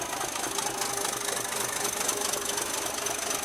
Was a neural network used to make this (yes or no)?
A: no